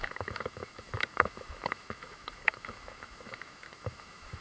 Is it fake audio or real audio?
fake